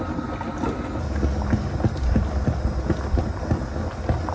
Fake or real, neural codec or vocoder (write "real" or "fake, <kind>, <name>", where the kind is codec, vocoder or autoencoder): real